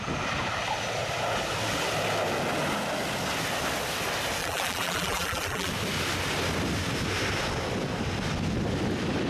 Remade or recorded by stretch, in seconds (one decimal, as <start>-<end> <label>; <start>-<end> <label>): 0.0-4.4 recorded; 4.4-5.7 remade; 5.7-9.3 recorded